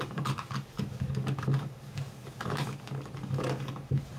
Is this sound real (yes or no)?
no